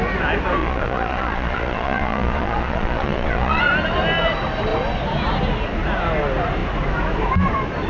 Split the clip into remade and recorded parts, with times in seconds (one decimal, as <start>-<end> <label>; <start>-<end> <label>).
0.0-0.6 recorded; 0.6-3.6 remade; 3.6-7.9 recorded